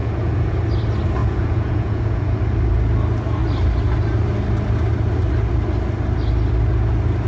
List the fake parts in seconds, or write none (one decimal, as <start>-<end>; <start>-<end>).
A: 0.0-0.6; 1.2-2.4